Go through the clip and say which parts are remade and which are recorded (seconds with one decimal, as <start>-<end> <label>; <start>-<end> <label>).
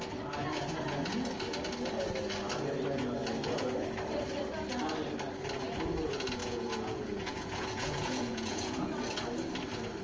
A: 0.0-6.4 recorded; 6.4-8.9 remade; 8.9-10.0 recorded